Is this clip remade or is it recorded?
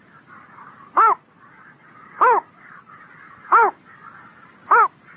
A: recorded